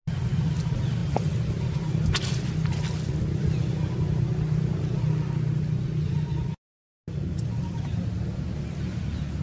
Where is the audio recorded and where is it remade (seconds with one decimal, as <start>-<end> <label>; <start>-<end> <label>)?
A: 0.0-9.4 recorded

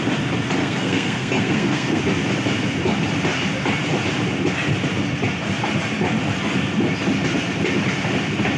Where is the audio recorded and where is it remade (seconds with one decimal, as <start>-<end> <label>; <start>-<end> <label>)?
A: 0.0-0.6 recorded; 0.6-2.0 remade; 2.0-8.6 recorded

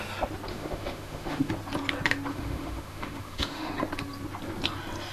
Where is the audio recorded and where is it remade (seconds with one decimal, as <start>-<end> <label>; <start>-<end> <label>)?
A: 0.0-0.5 recorded; 0.5-1.5 remade; 1.5-2.3 recorded; 2.3-3.7 remade; 3.7-5.1 recorded

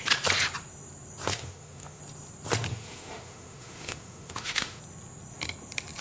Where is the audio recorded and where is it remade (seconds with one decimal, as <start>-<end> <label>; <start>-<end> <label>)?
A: 0.0-1.3 recorded; 1.3-2.0 remade; 2.0-2.7 recorded; 2.7-4.8 remade; 4.8-6.0 recorded